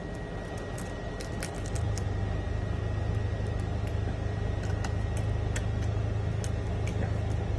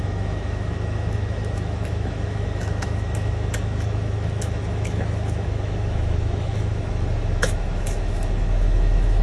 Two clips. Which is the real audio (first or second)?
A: first